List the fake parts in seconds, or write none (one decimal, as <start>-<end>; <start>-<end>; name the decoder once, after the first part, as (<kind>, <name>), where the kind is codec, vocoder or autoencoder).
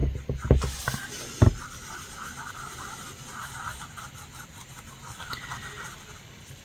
none